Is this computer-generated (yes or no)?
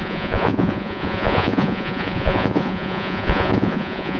yes